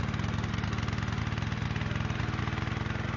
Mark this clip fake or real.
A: real